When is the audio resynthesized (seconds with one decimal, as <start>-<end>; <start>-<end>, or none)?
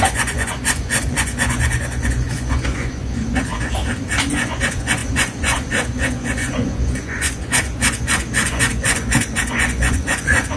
0.0-3.5; 4.3-10.6